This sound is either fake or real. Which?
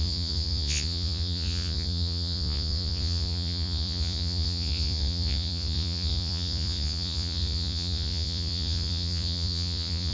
fake